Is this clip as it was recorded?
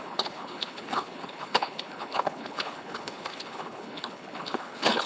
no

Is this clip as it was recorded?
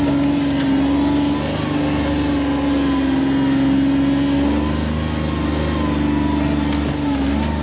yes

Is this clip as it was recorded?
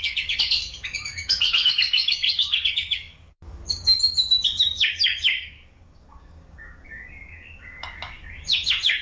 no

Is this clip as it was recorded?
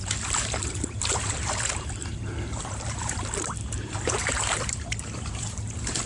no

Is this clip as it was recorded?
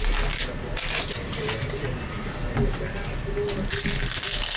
yes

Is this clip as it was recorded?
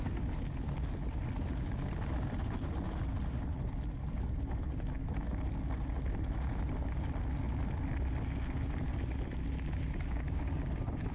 yes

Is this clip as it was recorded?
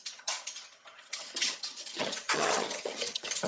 no